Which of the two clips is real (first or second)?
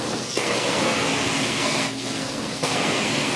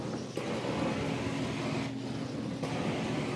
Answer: second